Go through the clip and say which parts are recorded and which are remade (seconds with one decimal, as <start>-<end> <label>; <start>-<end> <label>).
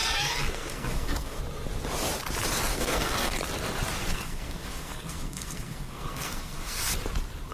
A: 0.0-1.4 remade; 1.4-2.7 recorded; 2.7-3.3 remade; 3.3-4.0 recorded; 4.0-6.9 remade; 6.9-7.5 recorded